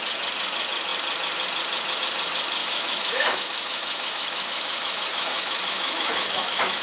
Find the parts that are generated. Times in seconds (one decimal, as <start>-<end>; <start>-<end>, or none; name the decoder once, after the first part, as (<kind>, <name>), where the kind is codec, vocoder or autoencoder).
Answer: 2.6-6.8 (autoencoder, DAC-VAE)